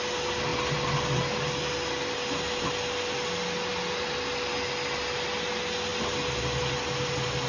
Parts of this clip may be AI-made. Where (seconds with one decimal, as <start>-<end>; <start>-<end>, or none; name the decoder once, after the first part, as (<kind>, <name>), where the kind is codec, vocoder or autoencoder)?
none